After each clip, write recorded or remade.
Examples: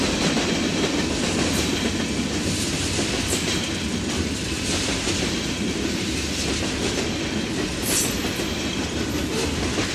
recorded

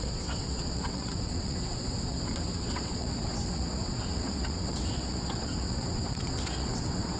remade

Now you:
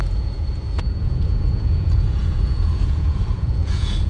remade